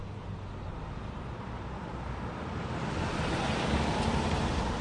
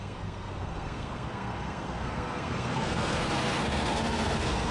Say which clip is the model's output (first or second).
second